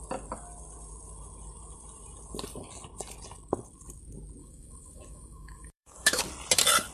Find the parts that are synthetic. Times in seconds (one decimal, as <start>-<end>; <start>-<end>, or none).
4.4-6.2

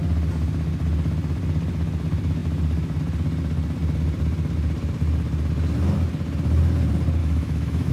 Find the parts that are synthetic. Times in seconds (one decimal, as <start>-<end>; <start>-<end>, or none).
7.2-7.9

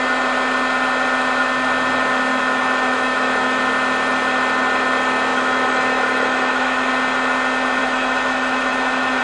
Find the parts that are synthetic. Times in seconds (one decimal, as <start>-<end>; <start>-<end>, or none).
2.3-3.6; 5.3-6.9; 7.8-9.2